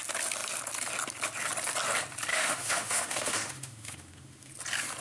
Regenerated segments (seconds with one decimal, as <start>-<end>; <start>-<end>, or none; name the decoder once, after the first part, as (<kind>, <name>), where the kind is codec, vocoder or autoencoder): 2.3-4.5 (autoencoder, DAC-VAE)